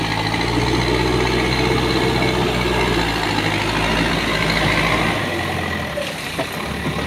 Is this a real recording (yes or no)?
yes